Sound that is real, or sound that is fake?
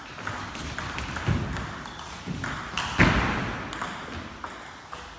real